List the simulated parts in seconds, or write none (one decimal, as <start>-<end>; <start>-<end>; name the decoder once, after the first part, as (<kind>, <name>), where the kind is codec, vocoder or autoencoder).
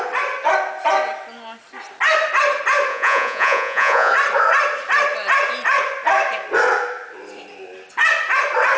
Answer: 2.9-4.1 (vocoder, Vocos)